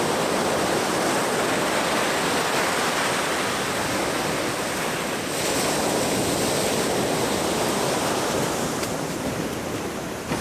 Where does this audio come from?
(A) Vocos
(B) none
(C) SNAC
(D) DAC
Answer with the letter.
B